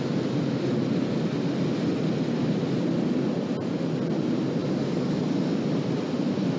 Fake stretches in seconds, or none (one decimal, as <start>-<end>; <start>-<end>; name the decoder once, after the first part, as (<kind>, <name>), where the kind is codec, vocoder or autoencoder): 4.6-5.2 (codec, DAC)